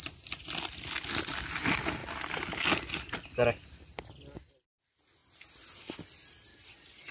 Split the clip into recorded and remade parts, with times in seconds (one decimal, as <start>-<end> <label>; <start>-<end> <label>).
0.0-6.5 recorded; 6.5-7.1 remade